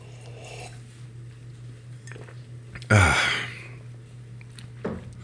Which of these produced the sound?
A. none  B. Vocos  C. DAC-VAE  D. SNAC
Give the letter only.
A